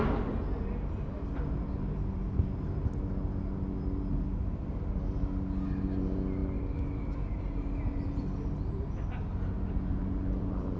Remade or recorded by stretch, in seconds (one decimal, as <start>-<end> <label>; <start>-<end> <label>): 0.0-10.8 recorded